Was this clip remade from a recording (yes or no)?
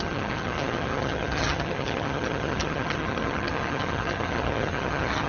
yes